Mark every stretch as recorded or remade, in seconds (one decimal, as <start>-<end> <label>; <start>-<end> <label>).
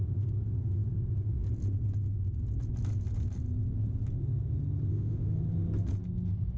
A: 0.0-4.9 recorded; 4.9-5.4 remade; 5.4-6.6 recorded